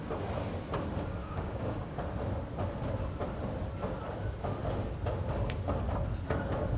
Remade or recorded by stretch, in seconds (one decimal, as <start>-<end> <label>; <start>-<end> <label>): 0.0-1.2 recorded; 1.2-2.0 remade; 2.0-6.8 recorded